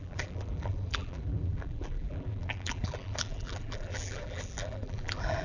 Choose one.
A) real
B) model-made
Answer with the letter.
B